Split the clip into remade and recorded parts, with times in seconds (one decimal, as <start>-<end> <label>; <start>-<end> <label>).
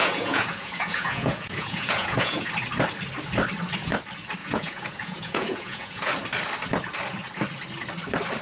0.0-2.5 remade; 2.5-4.4 recorded; 4.4-6.1 remade; 6.1-8.4 recorded